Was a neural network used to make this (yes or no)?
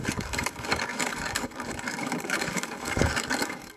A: yes